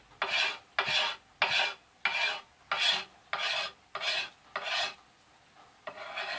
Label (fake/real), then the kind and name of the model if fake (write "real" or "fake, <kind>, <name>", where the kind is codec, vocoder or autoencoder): real